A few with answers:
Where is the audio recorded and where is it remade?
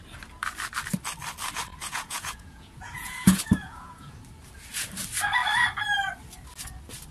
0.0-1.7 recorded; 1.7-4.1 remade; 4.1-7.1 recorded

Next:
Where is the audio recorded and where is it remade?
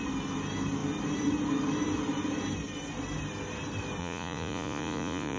0.0-4.0 recorded; 4.0-5.4 remade